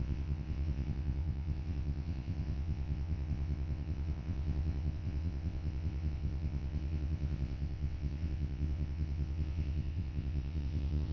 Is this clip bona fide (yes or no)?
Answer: no